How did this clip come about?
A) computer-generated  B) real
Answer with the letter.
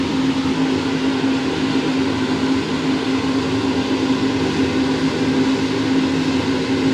B